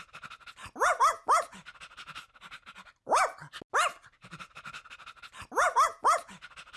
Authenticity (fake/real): real